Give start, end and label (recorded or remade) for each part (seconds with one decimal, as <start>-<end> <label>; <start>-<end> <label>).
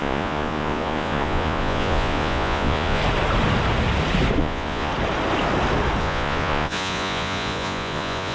0.0-3.0 remade; 3.0-4.4 recorded; 4.4-4.9 remade; 4.9-6.0 recorded; 6.0-8.3 remade